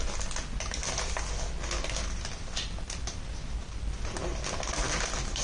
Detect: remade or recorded recorded